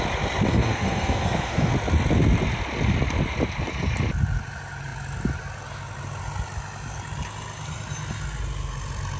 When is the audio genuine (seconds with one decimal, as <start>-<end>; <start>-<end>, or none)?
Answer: 0.0-0.5; 1.7-9.2